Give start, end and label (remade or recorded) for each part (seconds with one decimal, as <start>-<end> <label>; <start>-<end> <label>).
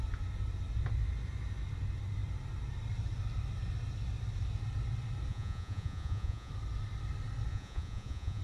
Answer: 0.0-5.3 recorded; 5.3-6.5 remade; 6.5-7.5 recorded; 7.5-8.4 remade